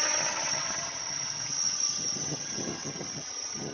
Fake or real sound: fake